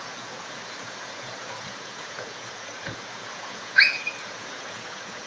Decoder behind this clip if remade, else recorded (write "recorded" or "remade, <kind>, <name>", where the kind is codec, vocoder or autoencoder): remade, vocoder, Vocos